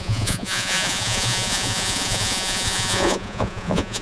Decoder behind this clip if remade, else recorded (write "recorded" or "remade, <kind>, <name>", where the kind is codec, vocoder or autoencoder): remade, vocoder, Vocos